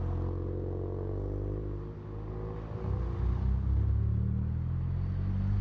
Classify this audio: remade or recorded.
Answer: recorded